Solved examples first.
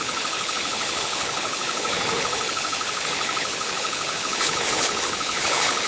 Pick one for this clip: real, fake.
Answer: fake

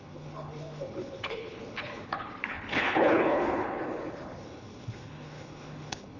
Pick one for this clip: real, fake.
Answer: fake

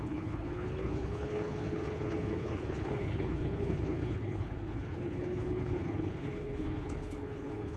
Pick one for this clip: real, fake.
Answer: fake